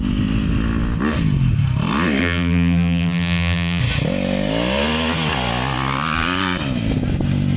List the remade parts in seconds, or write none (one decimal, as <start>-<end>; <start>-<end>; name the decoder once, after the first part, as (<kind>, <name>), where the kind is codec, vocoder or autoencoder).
2.2-3.8 (vocoder, BigVGAN v2)